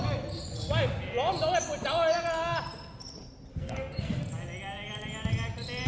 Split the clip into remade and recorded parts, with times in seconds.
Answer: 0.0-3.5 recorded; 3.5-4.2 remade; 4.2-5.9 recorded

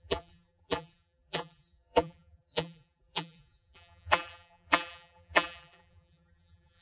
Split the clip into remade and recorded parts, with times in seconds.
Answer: 0.0-6.8 remade

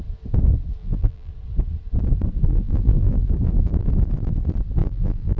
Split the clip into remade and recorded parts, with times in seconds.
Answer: 0.0-0.8 recorded; 0.8-1.3 remade; 1.3-2.5 recorded; 2.5-3.3 remade; 3.3-4.8 recorded; 4.8-5.4 remade

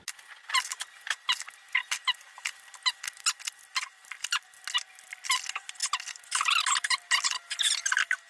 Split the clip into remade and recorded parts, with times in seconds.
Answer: 0.0-3.9 recorded; 3.9-4.5 remade; 4.5-8.3 recorded

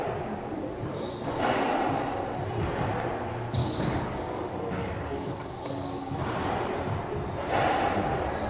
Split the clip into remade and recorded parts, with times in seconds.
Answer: 0.0-3.6 recorded; 3.6-6.2 remade; 6.2-8.5 recorded

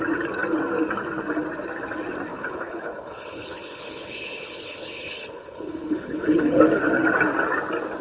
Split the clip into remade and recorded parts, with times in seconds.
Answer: 0.0-2.3 recorded; 2.3-6.6 remade; 6.6-8.0 recorded

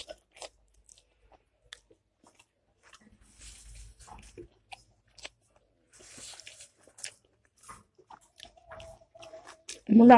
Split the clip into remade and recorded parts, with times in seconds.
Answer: 0.0-10.2 recorded